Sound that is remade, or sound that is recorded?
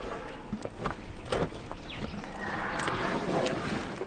recorded